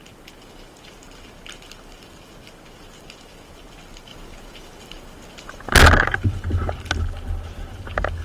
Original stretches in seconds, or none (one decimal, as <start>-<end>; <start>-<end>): 0.0-8.2